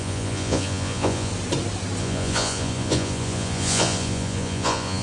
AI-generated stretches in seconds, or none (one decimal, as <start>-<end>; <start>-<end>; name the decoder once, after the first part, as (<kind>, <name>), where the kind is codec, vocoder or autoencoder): 0.0-1.3 (vocoder, Vocos); 2.0-5.0